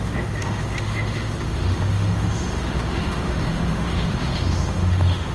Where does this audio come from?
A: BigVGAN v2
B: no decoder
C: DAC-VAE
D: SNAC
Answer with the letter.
C